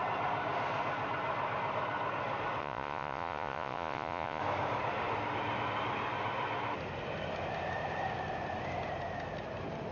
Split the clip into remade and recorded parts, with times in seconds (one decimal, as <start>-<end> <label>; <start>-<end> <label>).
0.0-2.6 recorded; 2.6-4.4 remade; 4.4-9.9 recorded